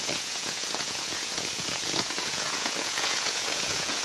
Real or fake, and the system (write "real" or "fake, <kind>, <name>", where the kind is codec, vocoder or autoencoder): fake, vocoder, Vocos